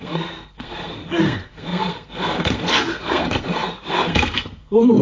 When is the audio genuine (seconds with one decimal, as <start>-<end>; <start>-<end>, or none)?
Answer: none